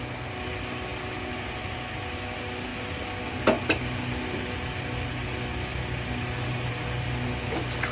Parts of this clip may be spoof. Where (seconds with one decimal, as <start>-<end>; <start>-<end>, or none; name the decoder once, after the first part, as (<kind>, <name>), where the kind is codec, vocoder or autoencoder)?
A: none